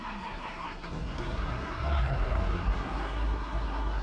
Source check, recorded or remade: remade